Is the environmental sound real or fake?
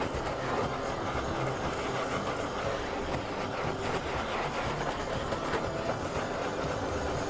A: real